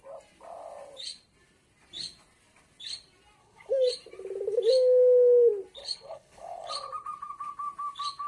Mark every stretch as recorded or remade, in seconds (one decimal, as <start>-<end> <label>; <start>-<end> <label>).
0.0-3.4 recorded; 3.4-3.9 remade; 3.9-5.8 recorded; 5.8-6.7 remade; 6.7-8.3 recorded